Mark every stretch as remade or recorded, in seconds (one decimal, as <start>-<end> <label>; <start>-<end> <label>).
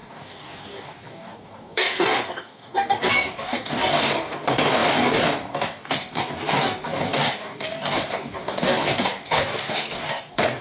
0.0-10.6 remade